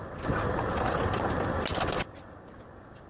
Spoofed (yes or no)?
no